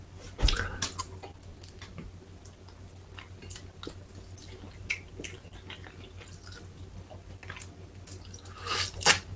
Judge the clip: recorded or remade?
recorded